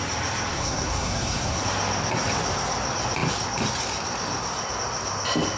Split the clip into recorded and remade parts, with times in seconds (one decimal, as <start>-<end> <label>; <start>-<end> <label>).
0.0-0.5 recorded; 0.5-1.6 remade; 1.6-5.6 recorded